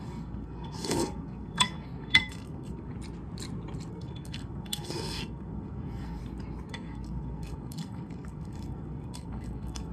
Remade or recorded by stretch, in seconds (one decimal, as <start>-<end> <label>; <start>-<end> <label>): 0.0-2.9 remade; 2.9-3.9 recorded; 3.9-6.2 remade; 6.2-6.7 recorded; 6.7-9.9 remade